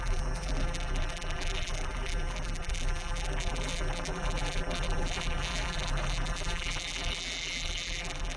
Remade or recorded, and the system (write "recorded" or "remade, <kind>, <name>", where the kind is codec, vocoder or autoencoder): remade, vocoder, BigVGAN v2